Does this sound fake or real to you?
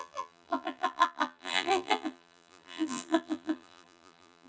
fake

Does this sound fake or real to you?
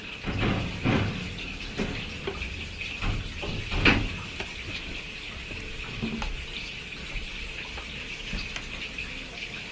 real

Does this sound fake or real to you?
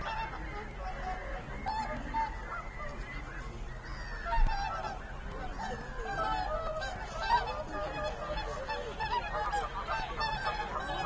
real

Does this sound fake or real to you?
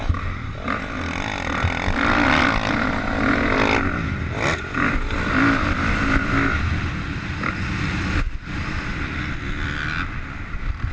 real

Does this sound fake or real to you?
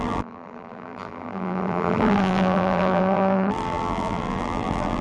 fake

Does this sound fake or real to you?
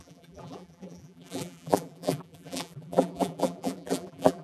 fake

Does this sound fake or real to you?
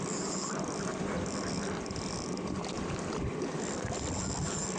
fake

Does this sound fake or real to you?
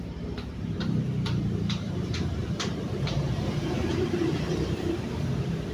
fake